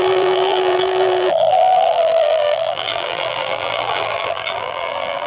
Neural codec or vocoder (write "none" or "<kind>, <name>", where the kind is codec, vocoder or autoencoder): vocoder, BigVGAN v2